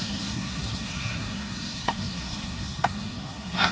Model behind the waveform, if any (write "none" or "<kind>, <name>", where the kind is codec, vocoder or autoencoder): codec, SNAC